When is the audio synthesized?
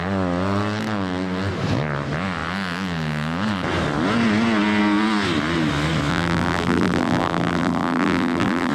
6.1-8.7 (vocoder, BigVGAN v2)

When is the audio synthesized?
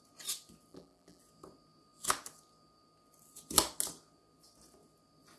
0.7-1.2 (vocoder, BigVGAN v2)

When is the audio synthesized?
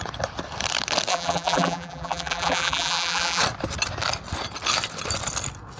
1.1-3.4 (vocoder, BigVGAN v2)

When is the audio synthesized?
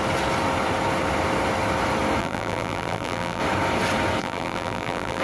2.2-3.4 (vocoder, BigVGAN v2); 4.2-5.2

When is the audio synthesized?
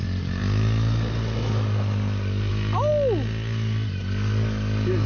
none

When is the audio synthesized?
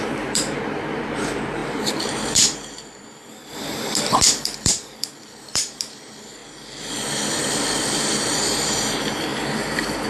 0.0-6.4 (vocoder, BigVGAN v2); 7.9-10.1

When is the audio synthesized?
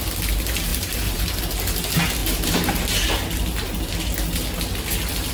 0.7-1.4 (vocoder, BigVGAN v2); 2.2-2.7